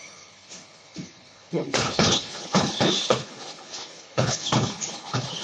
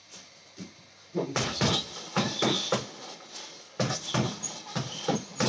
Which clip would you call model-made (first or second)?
first